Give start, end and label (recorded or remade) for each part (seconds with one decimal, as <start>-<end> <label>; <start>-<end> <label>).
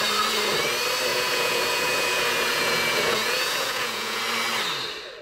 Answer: 0.0-1.1 recorded; 1.1-4.2 remade; 4.2-5.2 recorded